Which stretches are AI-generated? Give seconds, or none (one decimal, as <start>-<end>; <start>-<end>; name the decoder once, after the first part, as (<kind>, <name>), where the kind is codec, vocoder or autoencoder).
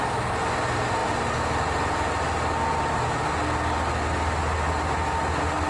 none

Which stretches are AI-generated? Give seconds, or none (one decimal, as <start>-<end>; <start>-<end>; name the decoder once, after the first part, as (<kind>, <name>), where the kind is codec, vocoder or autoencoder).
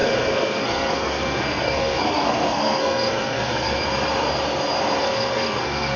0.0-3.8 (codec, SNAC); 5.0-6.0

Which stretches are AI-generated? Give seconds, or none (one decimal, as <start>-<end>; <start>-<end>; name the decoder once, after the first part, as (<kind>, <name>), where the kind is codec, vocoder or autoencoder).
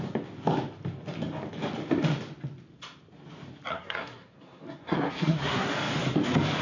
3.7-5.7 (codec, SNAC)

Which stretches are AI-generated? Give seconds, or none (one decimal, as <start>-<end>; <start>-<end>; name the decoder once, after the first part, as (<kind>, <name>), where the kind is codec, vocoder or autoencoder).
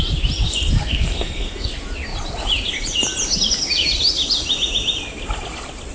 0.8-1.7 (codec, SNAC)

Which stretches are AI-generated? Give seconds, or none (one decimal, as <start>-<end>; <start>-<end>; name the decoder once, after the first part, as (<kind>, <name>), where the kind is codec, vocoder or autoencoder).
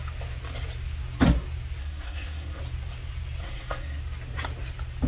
1.8-2.6 (codec, SNAC); 3.4-4.0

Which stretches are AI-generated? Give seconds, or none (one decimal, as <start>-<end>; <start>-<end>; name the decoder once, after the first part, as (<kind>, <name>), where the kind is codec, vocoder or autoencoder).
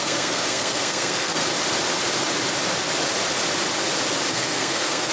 0.0-1.4 (codec, SNAC); 4.3-5.1